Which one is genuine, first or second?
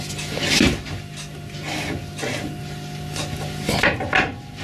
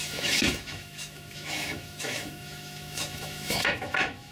first